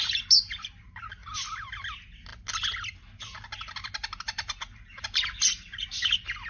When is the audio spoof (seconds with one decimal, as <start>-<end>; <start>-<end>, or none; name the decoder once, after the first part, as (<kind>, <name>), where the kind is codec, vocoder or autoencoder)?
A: none